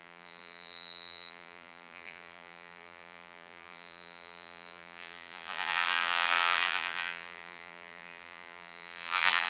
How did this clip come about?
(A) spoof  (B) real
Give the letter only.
A